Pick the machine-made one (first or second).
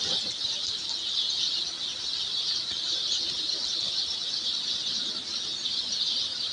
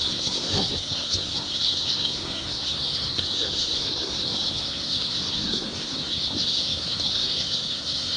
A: second